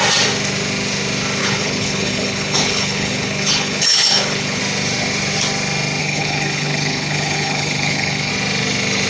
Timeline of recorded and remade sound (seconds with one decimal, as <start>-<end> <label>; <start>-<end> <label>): 0.0-1.4 recorded; 1.4-4.6 remade; 4.6-6.0 recorded; 6.0-8.3 remade; 8.3-9.1 recorded